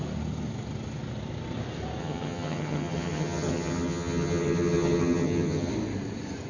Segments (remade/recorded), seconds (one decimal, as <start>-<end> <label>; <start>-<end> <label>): 0.0-2.0 recorded; 2.0-5.7 remade; 5.7-6.5 recorded